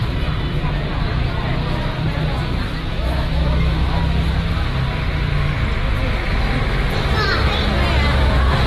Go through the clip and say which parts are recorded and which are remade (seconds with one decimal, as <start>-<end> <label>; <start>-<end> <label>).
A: 0.0-2.9 recorded; 2.9-4.0 remade; 4.0-8.7 recorded